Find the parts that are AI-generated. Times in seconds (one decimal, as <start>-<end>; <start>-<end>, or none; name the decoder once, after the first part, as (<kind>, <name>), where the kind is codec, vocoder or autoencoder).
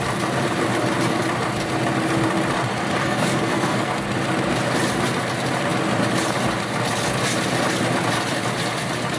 3.0-3.9 (codec, SNAC)